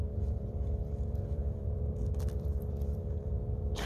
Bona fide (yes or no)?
no